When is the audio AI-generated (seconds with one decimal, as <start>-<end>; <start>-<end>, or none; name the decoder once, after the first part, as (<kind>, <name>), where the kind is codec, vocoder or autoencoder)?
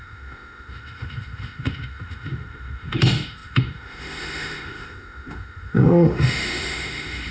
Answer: 0.0-7.3 (autoencoder, DAC-VAE)